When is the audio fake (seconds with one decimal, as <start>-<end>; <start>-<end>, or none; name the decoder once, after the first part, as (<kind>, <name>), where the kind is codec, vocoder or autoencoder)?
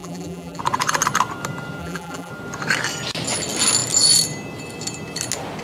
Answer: 0.0-0.6 (vocoder, BigVGAN v2); 1.8-2.3